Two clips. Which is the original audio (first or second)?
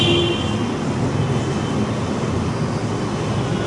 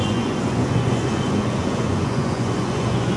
first